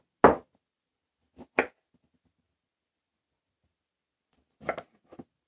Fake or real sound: real